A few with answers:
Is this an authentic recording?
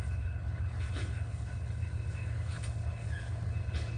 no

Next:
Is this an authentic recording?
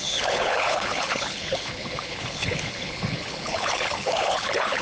no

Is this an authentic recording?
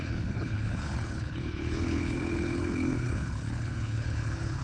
no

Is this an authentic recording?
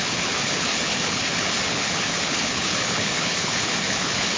no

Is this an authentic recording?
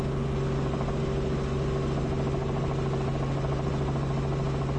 yes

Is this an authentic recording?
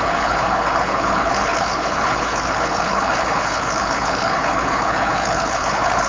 no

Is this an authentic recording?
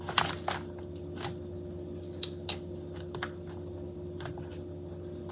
yes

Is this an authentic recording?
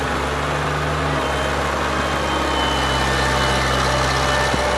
yes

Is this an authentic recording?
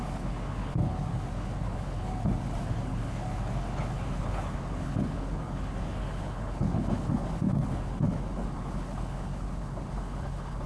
no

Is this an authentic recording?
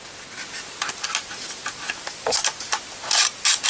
yes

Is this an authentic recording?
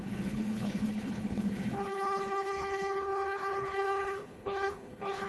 no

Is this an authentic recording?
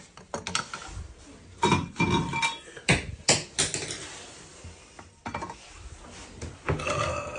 yes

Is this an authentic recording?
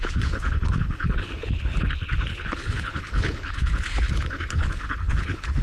no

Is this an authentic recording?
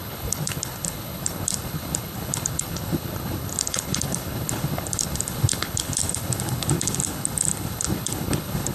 no